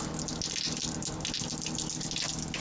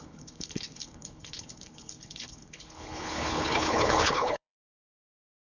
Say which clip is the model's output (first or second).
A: second